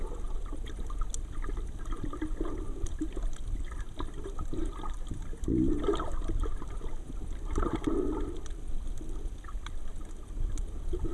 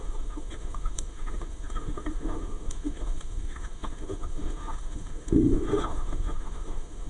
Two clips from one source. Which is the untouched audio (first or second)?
first